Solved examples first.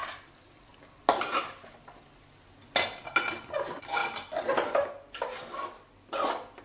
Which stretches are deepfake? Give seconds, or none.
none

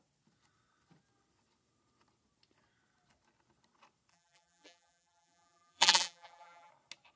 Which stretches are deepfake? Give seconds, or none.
4.1-6.7 (vocoder, BigVGAN v2)

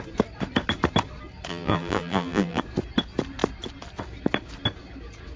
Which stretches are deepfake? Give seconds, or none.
1.5-2.6 (vocoder, BigVGAN v2)

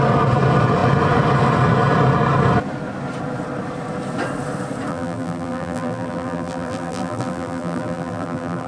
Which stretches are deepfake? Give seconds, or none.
4.9-8.7 (vocoder, BigVGAN v2)